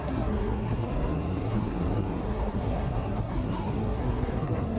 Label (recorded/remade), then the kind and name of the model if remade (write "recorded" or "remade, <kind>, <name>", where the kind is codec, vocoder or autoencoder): remade, codec, SNAC